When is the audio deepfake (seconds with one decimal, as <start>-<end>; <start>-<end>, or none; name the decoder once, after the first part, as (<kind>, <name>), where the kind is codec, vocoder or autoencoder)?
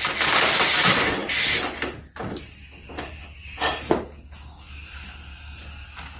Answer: none